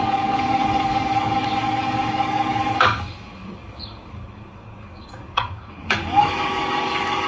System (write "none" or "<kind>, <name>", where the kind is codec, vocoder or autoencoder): codec, DAC